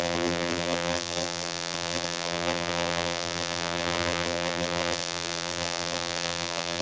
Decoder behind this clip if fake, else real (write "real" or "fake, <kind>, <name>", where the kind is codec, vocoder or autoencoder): fake, vocoder, BigVGAN v2